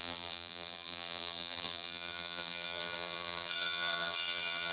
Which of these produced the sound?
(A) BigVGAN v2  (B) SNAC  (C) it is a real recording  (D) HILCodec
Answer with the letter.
A